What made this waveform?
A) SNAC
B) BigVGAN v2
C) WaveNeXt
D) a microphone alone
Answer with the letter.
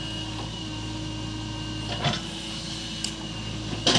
D